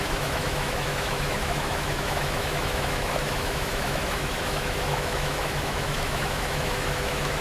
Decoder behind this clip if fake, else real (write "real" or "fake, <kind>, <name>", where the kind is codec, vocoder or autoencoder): fake, autoencoder, DAC-VAE